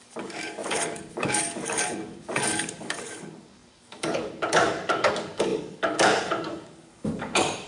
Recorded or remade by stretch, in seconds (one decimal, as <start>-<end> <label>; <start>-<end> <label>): 0.0-7.7 remade